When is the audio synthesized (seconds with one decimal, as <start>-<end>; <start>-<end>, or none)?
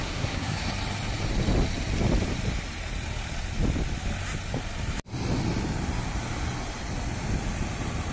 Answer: 0.0-0.7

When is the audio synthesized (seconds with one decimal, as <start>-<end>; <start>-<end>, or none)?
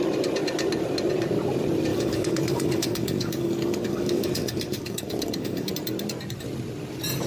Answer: 1.9-5.7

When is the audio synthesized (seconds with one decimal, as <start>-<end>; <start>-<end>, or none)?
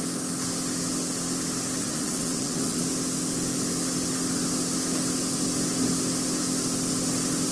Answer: 1.8-2.8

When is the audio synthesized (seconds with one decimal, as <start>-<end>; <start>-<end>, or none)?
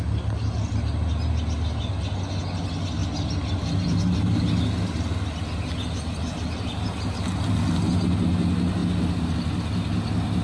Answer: none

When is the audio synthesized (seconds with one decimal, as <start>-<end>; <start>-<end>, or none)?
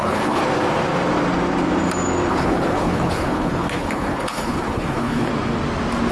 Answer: 0.0-0.4; 2.3-5.3